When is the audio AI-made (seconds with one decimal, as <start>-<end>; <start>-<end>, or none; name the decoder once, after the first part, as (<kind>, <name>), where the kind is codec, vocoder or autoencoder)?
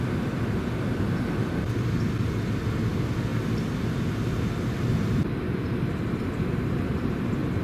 none